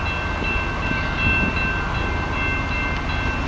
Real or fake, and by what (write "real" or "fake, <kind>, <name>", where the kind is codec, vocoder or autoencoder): real